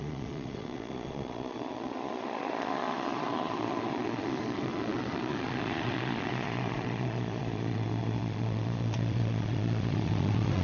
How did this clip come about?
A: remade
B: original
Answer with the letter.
A